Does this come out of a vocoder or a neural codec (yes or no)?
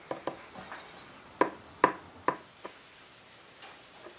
no